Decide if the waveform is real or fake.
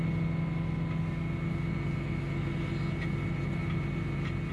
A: real